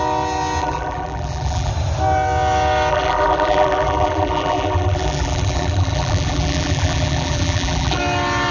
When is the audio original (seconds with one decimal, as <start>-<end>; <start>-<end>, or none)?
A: 0.0-0.6; 1.7-2.9; 8.0-8.5